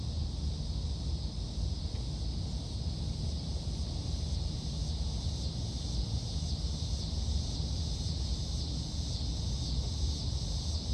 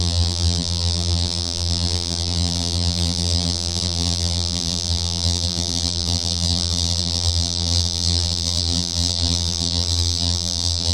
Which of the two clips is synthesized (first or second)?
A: second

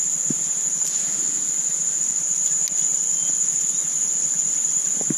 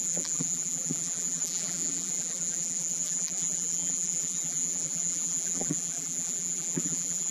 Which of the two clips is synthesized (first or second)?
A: second